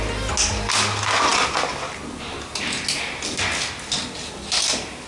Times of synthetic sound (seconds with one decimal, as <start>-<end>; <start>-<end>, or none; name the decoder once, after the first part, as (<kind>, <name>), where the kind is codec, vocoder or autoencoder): none